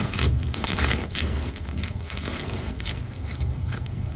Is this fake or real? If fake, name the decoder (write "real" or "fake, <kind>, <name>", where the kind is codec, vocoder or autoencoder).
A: fake, codec, SNAC